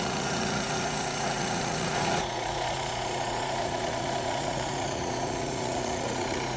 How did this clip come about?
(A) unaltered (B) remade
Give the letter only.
B